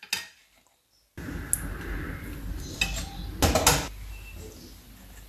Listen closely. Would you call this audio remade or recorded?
recorded